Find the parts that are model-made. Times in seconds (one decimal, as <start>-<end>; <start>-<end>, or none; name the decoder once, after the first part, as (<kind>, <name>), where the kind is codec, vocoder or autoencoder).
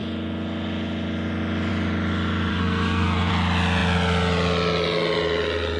2.5-3.3 (codec, SNAC)